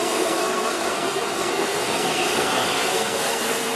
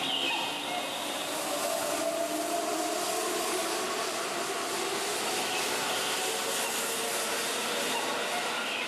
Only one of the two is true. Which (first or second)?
second